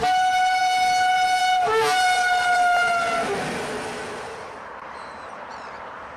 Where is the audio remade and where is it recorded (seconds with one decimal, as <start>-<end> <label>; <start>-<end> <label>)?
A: 0.0-2.8 remade; 2.8-4.8 recorded; 4.8-6.2 remade